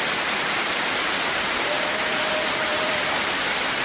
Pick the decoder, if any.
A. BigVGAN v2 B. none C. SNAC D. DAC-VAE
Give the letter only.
A